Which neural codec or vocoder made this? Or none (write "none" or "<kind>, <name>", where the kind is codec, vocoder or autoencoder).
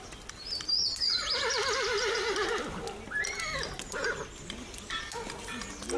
none